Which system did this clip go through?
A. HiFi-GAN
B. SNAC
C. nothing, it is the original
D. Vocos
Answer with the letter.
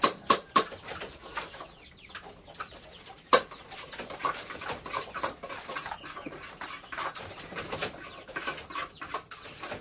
C